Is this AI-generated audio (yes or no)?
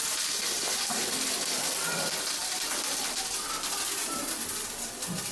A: yes